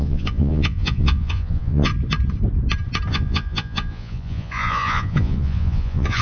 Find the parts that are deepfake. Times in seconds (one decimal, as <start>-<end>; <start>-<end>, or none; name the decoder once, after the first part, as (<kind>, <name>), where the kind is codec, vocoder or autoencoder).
0.0-1.9 (vocoder, Vocos); 3.1-6.2